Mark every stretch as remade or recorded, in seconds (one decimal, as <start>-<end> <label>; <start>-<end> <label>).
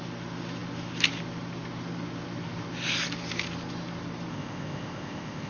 0.0-4.3 recorded; 4.3-5.5 remade